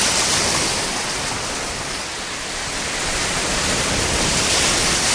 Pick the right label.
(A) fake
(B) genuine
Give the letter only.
B